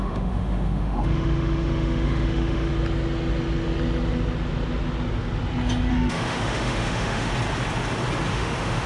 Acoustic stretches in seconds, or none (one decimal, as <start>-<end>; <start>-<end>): 2.7-5.9; 7.3-8.3